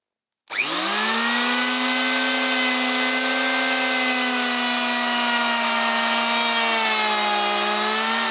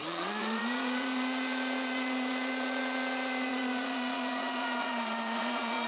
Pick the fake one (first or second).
second